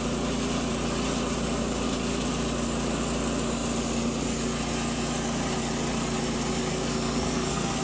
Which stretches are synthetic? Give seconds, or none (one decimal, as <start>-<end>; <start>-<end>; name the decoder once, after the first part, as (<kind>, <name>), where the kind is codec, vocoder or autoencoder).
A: 6.7-7.8 (codec, SNAC)

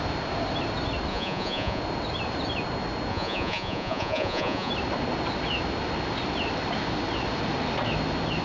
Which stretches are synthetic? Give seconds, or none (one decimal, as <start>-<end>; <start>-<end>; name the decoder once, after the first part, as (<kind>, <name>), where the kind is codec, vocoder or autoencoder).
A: 1.1-1.8 (vocoder, Vocos); 3.1-4.7

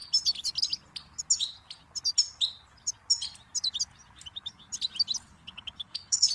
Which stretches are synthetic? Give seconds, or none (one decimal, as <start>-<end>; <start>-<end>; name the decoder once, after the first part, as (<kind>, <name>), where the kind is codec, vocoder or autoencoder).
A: 5.3-6.3 (codec, HILCodec)

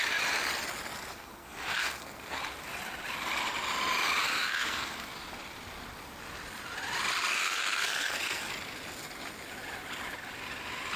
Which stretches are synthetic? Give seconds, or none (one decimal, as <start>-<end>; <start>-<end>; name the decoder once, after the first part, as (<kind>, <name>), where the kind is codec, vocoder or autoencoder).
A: 1.1-2.4 (codec, SNAC); 4.2-5.1; 7.3-8.5

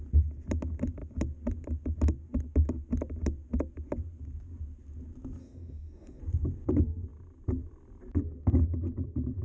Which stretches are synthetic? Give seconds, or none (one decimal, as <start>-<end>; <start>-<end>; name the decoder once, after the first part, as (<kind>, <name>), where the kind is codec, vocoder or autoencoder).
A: 5.4-6.2 (codec, DAC)

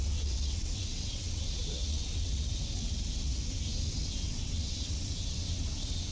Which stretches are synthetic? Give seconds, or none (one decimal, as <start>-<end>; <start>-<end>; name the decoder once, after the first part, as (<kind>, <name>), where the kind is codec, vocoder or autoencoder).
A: 0.0-3.3 (vocoder, WaveNeXt); 3.9-6.1

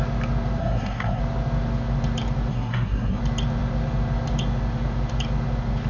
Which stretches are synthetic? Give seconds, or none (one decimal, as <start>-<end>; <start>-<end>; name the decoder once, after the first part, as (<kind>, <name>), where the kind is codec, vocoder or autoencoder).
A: 0.6-1.2 (codec, SNAC); 2.5-3.2